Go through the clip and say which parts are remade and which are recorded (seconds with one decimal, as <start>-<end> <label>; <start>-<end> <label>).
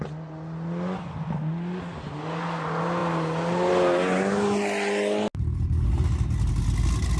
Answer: 0.0-7.2 recorded